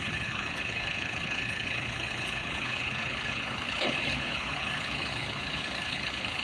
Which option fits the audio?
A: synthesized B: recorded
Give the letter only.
A